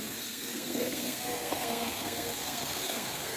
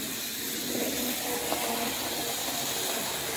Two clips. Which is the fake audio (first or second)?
first